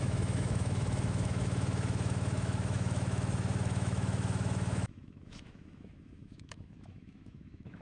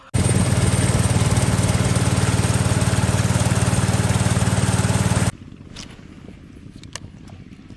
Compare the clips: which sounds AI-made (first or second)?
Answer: first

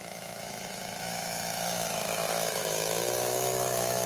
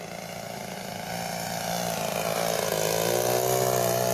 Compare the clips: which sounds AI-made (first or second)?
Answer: first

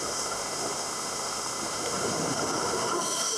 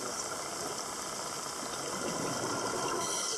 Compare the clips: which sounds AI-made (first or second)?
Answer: first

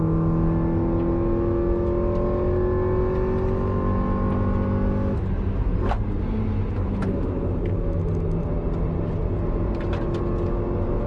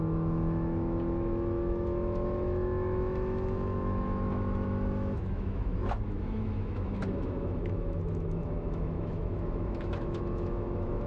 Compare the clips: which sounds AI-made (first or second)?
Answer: second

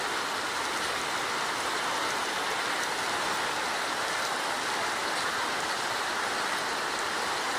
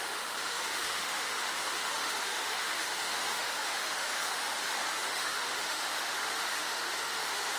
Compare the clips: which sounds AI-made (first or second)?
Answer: second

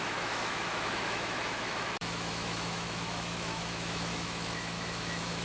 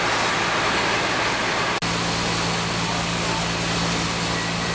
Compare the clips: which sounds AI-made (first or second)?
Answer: first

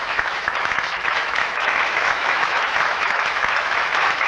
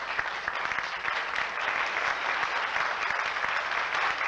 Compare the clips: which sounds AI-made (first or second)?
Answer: first